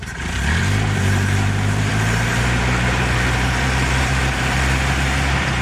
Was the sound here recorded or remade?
remade